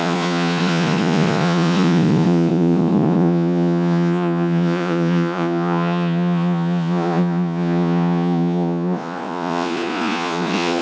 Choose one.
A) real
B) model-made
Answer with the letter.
B